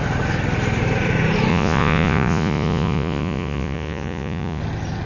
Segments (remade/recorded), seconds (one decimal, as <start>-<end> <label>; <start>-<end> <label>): 0.0-1.5 recorded; 1.5-4.6 remade; 4.6-5.1 recorded